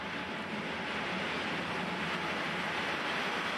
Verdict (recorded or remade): recorded